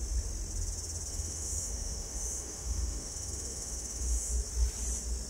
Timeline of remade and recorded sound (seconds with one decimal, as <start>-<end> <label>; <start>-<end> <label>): 0.0-1.1 recorded; 1.1-4.3 remade; 4.3-5.3 recorded